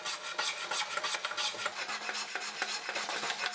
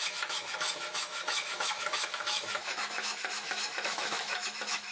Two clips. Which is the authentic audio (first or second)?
first